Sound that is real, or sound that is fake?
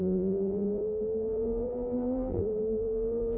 fake